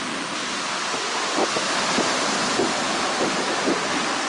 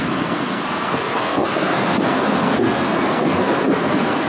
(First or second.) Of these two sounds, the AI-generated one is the second